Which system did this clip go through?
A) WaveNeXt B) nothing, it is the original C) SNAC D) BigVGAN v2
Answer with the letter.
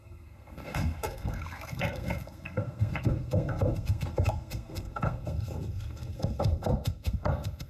C